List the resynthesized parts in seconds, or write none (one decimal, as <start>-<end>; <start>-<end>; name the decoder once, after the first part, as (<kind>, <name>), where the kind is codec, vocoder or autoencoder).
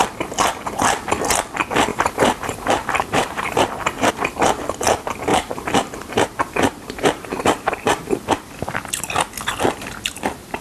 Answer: 1.9-4.1 (vocoder, BigVGAN v2); 5.3-8.5